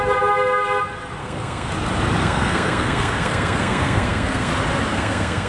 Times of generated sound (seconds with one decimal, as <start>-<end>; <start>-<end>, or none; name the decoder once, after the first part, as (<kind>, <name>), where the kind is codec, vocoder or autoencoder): 1.2-1.7 (codec, SNAC); 2.2-4.5; 4.9-5.5